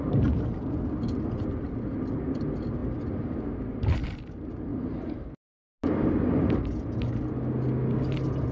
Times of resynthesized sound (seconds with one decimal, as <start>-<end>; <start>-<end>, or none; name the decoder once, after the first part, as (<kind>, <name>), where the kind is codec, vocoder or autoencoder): none